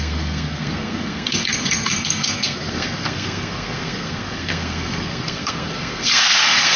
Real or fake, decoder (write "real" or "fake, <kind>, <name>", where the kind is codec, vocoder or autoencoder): fake, codec, SNAC